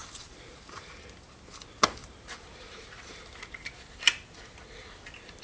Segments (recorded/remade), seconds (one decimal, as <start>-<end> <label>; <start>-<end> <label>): 0.0-1.2 remade; 1.2-2.0 recorded; 2.0-3.7 remade; 3.7-5.4 recorded